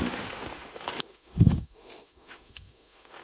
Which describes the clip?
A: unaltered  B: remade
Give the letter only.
B